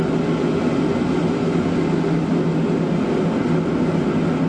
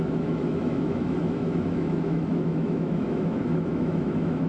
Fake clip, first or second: second